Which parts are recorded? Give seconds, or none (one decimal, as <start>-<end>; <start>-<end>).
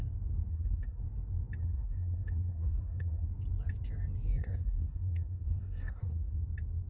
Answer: 0.0-0.5; 1.0-1.6; 3.3-4.3; 6.4-6.9